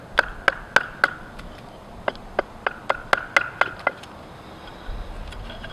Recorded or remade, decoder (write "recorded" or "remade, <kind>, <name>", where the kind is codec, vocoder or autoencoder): recorded